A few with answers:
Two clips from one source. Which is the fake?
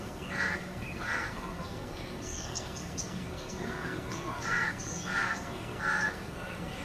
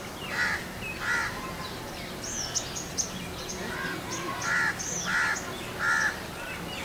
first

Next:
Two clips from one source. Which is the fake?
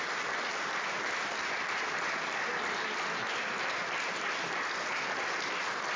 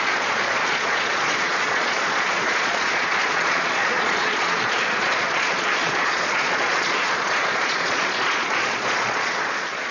second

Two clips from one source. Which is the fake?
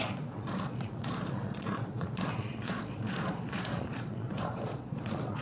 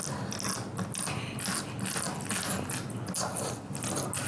first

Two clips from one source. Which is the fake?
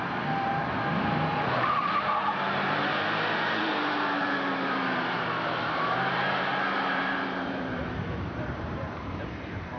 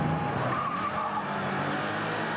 first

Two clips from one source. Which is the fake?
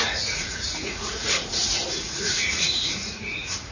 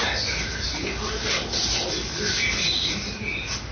first